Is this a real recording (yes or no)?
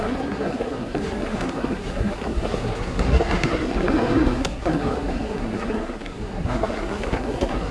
no